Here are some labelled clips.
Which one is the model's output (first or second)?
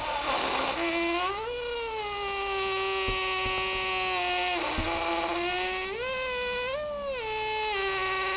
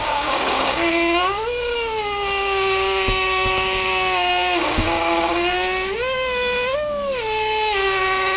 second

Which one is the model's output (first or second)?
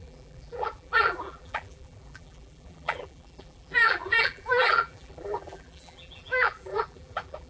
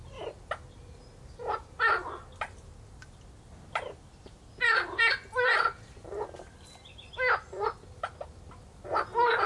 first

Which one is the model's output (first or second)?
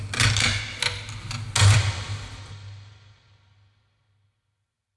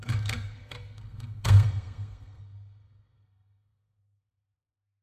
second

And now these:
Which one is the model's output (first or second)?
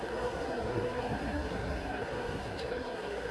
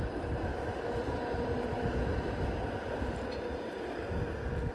first